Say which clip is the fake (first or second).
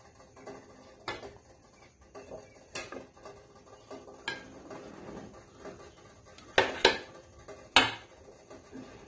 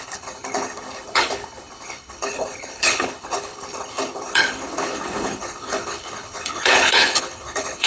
second